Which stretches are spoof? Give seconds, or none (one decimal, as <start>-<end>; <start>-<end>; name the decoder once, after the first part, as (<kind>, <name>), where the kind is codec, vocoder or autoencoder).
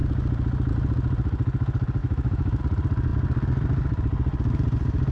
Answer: 2.0-2.6 (autoencoder, DAC-VAE)